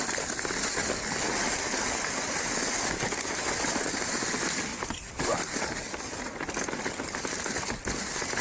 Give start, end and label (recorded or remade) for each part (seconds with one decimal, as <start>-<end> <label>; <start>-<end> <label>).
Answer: 0.0-8.4 recorded